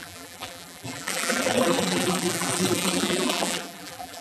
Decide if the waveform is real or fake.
fake